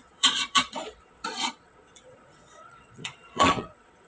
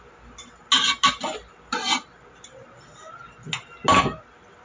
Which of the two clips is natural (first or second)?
second